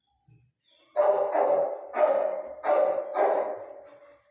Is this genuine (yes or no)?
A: yes